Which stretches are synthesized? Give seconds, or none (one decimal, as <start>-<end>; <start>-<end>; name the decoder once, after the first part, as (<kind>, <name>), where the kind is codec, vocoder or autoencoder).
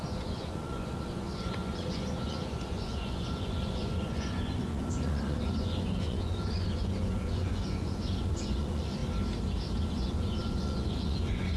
0.0-9.0 (vocoder, Vocos); 9.9-11.6